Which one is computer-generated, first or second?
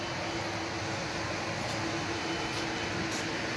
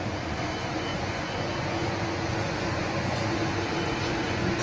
second